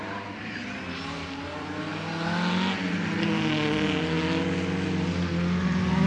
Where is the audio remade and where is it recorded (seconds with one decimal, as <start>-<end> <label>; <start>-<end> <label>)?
0.0-6.1 recorded